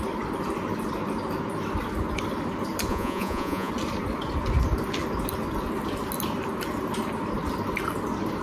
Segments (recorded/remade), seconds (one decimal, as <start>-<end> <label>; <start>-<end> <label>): 0.0-2.9 recorded; 2.9-3.7 remade; 3.7-8.4 recorded